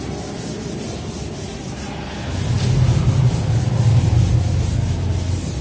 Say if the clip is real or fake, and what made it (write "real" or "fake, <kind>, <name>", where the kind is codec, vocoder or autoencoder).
real